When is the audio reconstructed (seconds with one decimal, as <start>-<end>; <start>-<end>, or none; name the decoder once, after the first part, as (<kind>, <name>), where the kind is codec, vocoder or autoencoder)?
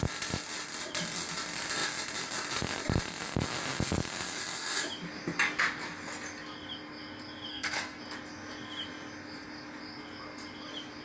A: 7.5-8.0 (codec, SNAC)